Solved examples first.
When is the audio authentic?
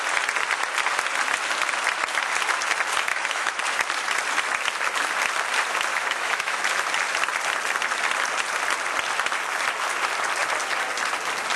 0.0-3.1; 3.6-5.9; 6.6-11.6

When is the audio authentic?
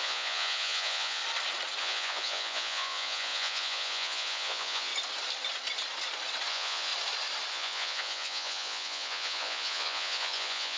1.2-1.8; 4.9-6.5; 6.9-7.5